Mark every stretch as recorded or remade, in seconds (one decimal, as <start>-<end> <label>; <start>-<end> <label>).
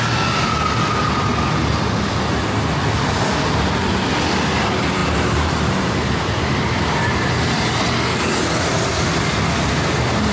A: 0.0-5.0 recorded; 5.0-7.8 remade; 7.8-10.3 recorded